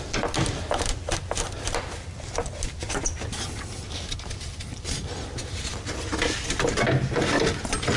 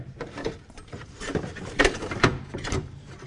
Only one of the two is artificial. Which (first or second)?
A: second